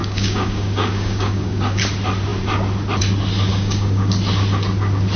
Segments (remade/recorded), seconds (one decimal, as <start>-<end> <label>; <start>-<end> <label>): 0.0-1.8 remade; 1.8-3.5 recorded; 3.5-4.1 remade; 4.1-5.2 recorded